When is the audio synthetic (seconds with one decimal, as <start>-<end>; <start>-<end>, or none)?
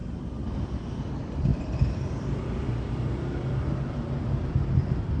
1.5-4.6